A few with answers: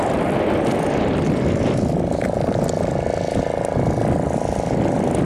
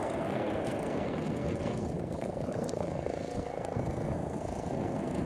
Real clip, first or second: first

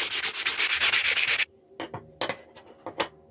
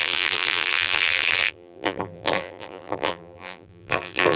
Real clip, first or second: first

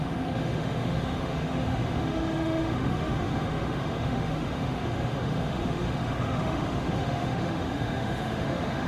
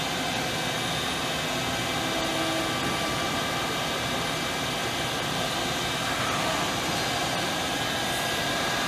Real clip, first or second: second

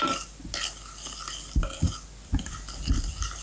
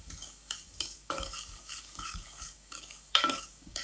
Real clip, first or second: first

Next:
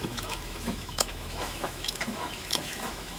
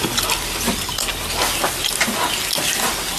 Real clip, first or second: second